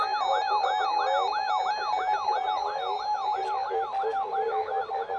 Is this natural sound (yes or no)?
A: yes